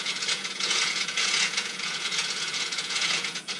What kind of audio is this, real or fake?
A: fake